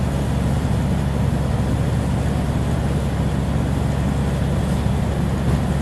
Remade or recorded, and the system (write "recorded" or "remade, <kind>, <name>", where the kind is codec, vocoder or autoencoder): recorded